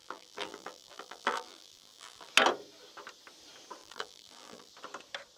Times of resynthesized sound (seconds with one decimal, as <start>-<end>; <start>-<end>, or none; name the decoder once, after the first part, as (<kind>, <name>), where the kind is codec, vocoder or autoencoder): 0.0-2.3 (vocoder, BigVGAN v2); 3.8-4.7